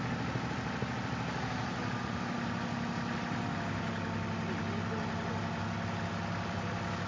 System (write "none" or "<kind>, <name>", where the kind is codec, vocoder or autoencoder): none